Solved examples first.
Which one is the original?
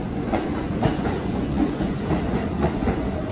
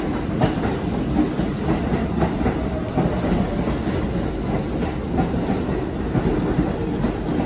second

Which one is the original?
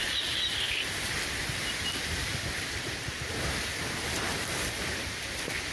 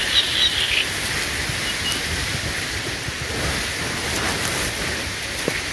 second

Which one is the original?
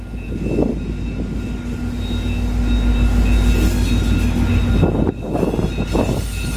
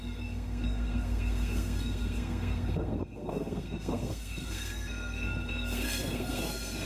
first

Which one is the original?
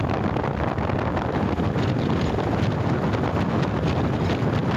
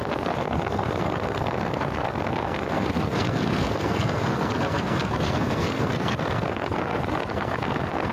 first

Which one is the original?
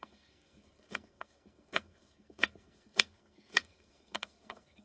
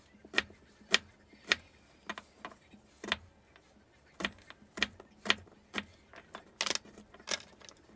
second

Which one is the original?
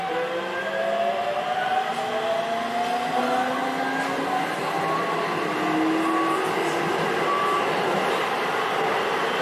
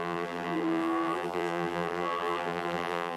first